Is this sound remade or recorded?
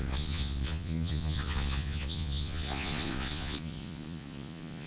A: remade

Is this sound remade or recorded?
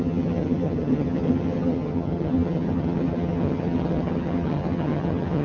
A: remade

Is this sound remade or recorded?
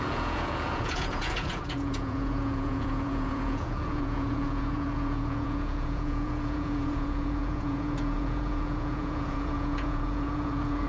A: remade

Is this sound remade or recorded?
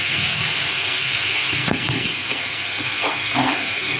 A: remade